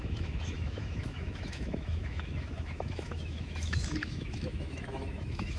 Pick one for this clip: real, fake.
fake